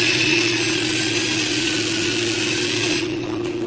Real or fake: fake